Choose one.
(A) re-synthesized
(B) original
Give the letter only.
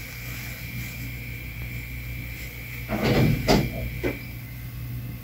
B